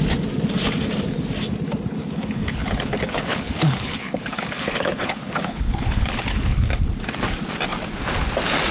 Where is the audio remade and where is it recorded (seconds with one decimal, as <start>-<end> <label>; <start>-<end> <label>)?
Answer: 0.0-2.0 recorded; 2.0-6.9 remade; 6.9-8.7 recorded